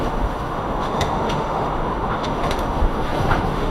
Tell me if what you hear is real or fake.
fake